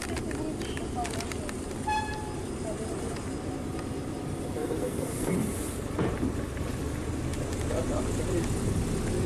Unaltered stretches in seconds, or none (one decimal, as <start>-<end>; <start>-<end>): 0.0-4.6; 5.3-9.3